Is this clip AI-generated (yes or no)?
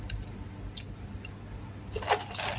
no